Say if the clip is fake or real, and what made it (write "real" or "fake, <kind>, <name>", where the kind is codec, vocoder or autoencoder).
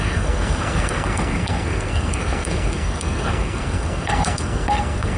fake, codec, SNAC